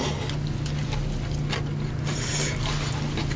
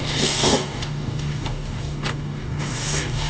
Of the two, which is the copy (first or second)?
second